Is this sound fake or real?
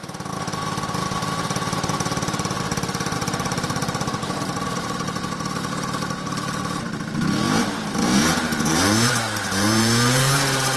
fake